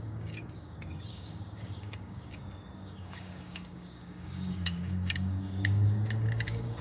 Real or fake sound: fake